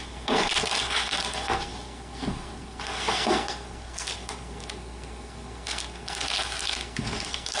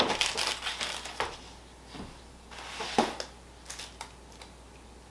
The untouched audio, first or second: second